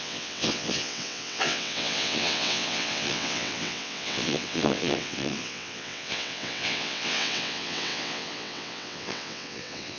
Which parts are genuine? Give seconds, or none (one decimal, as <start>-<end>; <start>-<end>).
none